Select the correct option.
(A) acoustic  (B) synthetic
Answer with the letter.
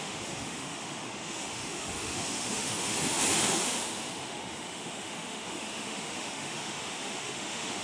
B